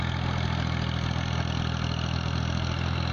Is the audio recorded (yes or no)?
yes